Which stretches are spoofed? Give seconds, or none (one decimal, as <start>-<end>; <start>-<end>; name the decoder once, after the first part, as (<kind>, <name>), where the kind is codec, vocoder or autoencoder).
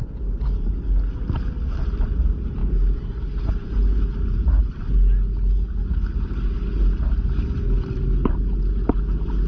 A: 0.0-0.8 (vocoder, BigVGAN v2); 2.6-4.9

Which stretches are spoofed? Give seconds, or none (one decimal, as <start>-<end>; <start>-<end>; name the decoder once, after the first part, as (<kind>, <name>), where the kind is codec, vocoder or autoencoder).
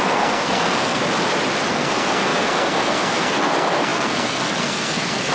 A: 0.0-1.0 (codec, SNAC); 1.7-5.3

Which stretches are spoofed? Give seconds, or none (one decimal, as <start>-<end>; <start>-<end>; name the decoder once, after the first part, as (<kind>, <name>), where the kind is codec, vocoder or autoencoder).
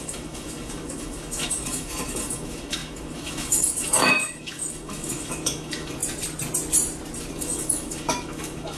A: 0.0-6.0 (autoencoder, DAC-VAE); 7.3-8.8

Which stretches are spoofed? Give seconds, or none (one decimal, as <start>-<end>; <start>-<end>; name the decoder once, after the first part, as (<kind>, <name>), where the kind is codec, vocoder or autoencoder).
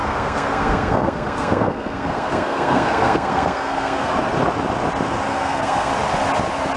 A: 0.0-4.1 (codec, SNAC); 5.3-5.9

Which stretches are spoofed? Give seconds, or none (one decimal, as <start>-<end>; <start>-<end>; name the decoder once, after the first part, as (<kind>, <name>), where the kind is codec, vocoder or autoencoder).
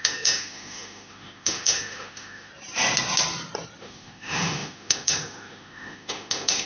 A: 0.0-2.5 (autoencoder, DAC-VAE); 3.8-6.7